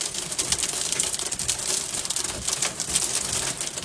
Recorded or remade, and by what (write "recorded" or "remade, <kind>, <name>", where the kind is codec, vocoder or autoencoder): recorded